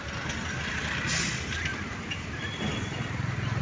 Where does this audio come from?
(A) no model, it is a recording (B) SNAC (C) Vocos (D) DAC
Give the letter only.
A